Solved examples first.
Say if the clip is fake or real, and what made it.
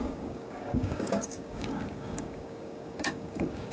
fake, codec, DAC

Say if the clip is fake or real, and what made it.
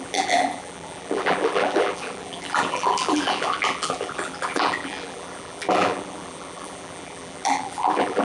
fake, vocoder, BigVGAN v2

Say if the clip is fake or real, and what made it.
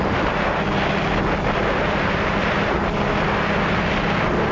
real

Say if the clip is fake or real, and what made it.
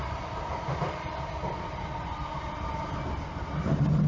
real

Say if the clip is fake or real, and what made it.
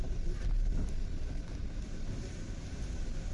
real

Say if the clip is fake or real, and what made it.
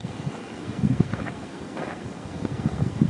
fake, codec, SNAC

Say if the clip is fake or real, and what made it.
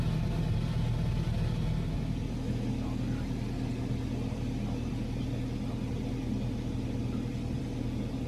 real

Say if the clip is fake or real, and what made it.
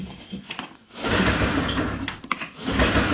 real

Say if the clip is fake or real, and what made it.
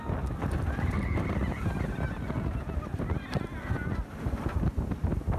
real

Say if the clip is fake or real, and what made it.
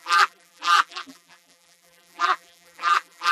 fake, vocoder, BigVGAN v2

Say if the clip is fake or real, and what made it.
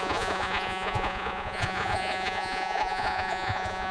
fake, vocoder, Vocos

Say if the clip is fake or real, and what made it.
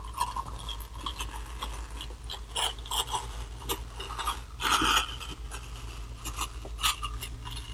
real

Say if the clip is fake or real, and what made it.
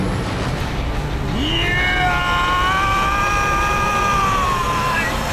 real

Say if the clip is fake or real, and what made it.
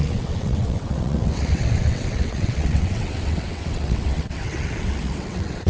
fake, vocoder, WaveNeXt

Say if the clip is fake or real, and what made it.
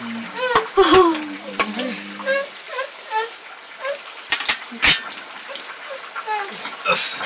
real